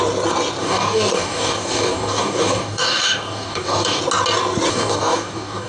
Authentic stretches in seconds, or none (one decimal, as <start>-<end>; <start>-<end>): 0.0-0.6; 4.0-4.7